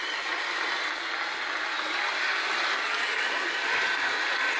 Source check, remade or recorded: recorded